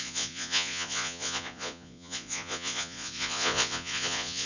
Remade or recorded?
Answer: remade